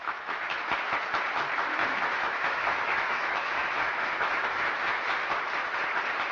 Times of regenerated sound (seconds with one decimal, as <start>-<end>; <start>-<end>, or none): 0.0-0.6; 1.8-5.3